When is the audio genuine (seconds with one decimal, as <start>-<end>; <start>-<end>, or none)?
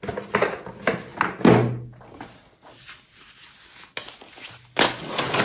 0.0-5.4